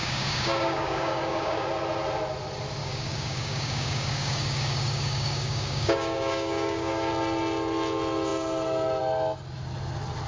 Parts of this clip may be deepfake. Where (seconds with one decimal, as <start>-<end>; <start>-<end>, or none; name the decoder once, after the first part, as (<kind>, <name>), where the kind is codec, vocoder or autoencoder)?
0.0-1.7 (codec, DAC); 2.8-7.1